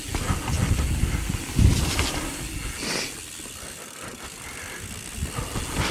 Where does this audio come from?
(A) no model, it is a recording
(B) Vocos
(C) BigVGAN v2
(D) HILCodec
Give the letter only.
A